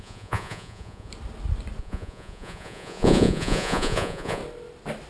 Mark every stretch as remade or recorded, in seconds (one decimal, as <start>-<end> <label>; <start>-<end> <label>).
0.0-1.1 remade; 1.1-1.8 recorded; 1.8-4.4 remade; 4.4-5.1 recorded

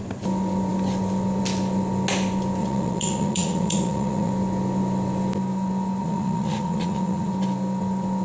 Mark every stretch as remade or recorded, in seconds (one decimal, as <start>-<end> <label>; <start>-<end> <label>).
0.0-2.6 recorded; 2.6-4.3 remade; 4.3-6.0 recorded; 6.0-7.3 remade; 7.3-8.2 recorded

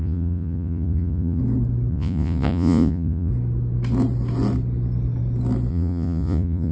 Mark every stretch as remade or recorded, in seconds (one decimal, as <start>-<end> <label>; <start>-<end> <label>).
0.0-1.4 remade; 1.4-1.9 recorded; 1.9-3.3 remade; 3.3-5.7 recorded; 5.7-6.7 remade

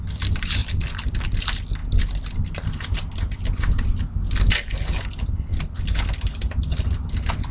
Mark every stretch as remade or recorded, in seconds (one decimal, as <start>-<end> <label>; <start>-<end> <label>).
0.0-7.5 recorded

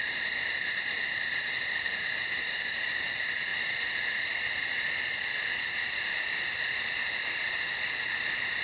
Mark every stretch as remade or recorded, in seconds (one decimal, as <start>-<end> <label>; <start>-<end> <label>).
0.0-8.6 recorded

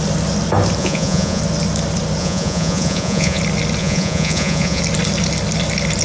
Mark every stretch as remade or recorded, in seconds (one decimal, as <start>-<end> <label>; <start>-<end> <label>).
0.0-0.8 recorded; 0.8-1.4 remade; 1.4-2.2 recorded; 2.2-3.4 remade; 3.4-3.8 recorded; 3.8-4.8 remade; 4.8-6.0 recorded

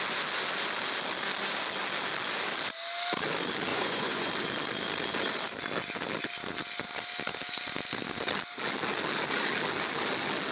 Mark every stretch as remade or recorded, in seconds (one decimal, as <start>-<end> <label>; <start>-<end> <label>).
0.0-3.7 recorded; 3.7-4.3 remade; 4.3-10.5 recorded